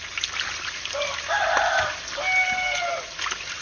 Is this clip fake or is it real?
real